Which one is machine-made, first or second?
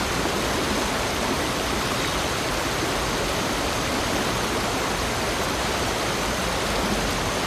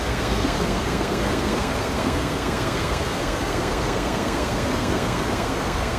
second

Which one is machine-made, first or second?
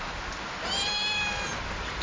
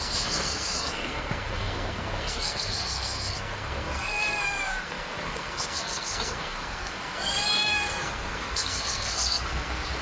second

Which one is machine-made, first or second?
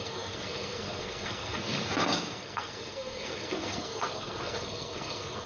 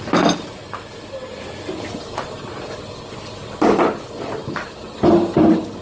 first